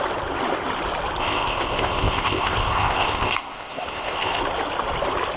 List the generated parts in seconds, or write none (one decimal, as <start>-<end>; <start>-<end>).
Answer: 1.2-4.4